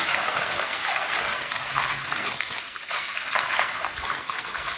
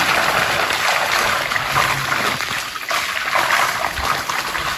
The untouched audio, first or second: second